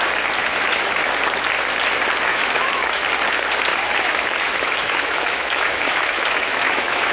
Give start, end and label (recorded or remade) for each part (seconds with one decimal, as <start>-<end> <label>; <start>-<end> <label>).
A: 0.0-0.4 recorded; 0.4-1.1 remade; 1.1-2.3 recorded; 2.3-3.1 remade; 3.1-3.7 recorded; 3.7-7.1 remade